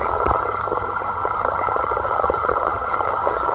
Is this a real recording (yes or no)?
no